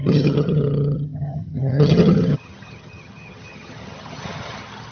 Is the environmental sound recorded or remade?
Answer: remade